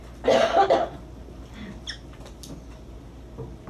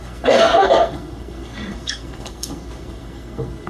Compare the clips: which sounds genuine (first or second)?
first